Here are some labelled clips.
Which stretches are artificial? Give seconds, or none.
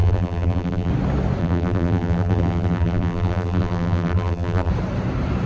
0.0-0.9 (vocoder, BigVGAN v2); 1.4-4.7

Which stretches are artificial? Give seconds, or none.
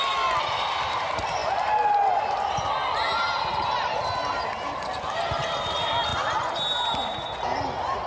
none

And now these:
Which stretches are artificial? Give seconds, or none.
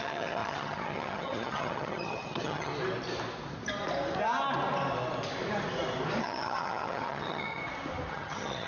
0.0-2.7 (vocoder, HiFi-GAN); 6.2-7.6; 8.1-8.7